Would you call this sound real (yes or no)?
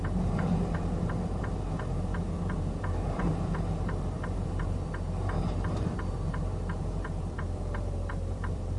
no